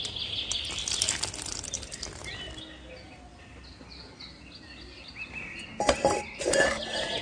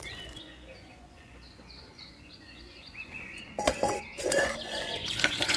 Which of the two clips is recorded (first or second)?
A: first